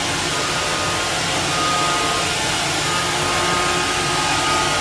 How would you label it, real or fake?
real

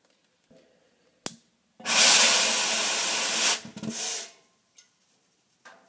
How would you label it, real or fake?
real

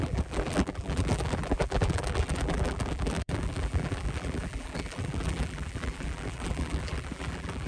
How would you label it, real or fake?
fake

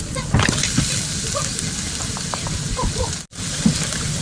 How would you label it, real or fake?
real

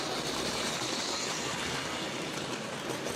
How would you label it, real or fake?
real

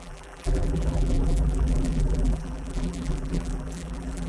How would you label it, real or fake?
fake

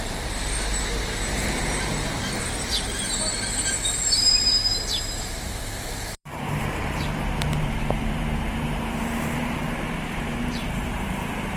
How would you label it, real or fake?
fake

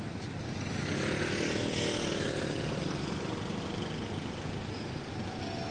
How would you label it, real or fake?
real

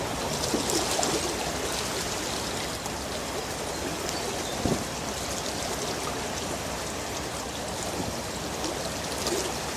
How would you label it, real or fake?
real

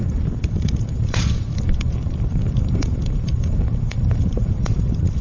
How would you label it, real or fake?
fake